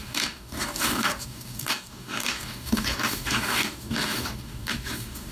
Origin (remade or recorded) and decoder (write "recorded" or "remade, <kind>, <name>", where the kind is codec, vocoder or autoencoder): remade, codec, DAC